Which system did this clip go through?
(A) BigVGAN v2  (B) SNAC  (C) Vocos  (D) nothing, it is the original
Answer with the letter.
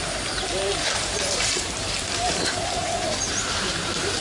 A